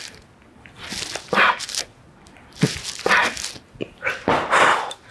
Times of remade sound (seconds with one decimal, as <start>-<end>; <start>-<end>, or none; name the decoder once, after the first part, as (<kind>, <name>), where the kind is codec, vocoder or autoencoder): none